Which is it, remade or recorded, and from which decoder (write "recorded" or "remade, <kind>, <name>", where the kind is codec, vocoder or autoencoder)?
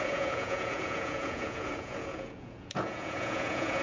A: remade, vocoder, Vocos